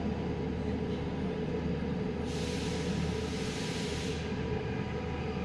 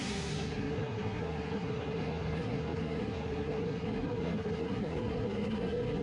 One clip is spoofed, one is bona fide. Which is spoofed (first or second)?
second